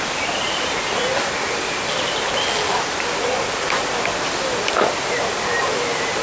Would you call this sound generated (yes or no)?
no